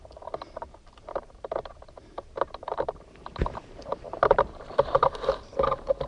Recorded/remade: remade